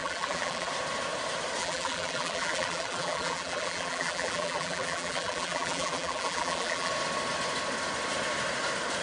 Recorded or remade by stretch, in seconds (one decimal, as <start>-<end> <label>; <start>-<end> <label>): 0.0-0.7 remade; 0.7-1.6 recorded; 1.6-6.9 remade; 6.9-9.0 recorded